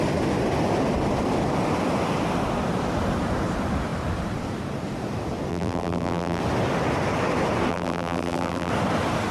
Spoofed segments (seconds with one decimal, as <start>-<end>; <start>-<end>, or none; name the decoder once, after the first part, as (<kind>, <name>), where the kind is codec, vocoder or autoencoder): 5.5-6.4 (vocoder, BigVGAN v2); 7.7-8.7